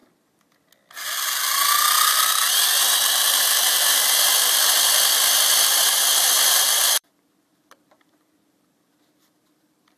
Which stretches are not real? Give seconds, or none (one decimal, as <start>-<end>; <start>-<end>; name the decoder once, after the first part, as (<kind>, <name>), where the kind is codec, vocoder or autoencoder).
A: 2.1-10.0 (vocoder, BigVGAN v2)